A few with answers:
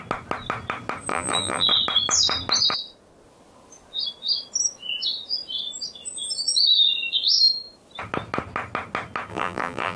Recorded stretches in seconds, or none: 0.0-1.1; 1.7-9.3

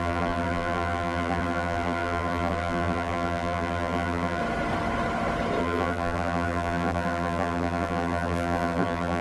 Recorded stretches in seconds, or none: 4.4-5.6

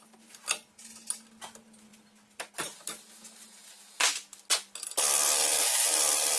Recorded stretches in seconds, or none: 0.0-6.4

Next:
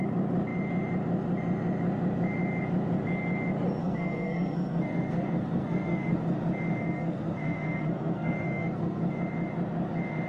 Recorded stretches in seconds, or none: 0.0-3.8; 6.2-6.7; 9.2-10.3

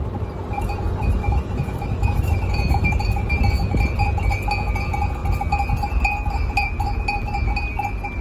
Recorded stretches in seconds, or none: 0.0-1.2; 3.0-8.2

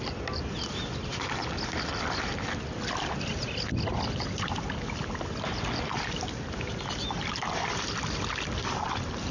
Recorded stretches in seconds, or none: 0.0-9.3

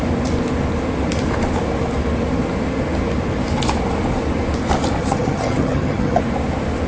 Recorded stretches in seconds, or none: 0.0-5.0; 6.2-6.9